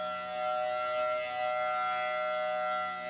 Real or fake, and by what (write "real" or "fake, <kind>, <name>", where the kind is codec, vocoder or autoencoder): real